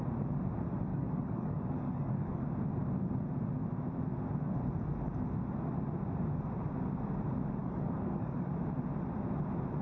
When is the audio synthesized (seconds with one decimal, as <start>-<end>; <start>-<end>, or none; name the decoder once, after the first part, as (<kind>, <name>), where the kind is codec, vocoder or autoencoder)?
0.9-2.4 (codec, DAC); 7.6-8.5